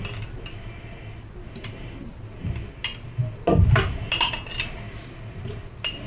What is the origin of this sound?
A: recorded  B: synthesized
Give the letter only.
A